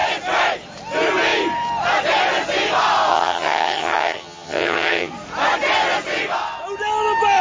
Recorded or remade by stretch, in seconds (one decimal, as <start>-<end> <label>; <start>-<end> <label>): 0.0-3.1 recorded; 3.1-5.1 remade; 5.1-7.4 recorded